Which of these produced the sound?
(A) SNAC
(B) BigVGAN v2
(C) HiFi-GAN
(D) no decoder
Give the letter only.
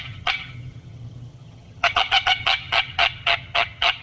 C